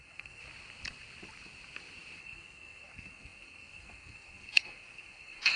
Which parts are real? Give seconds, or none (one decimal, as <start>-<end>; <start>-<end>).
0.4-2.2